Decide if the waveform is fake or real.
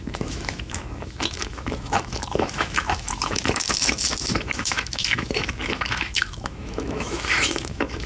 fake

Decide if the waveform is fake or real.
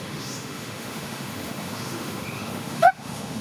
fake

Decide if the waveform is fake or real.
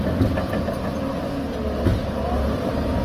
real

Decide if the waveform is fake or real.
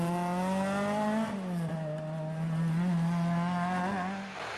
real